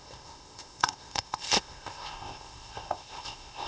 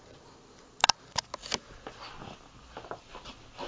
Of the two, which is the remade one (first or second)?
first